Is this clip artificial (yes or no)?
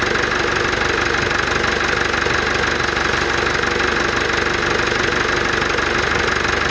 no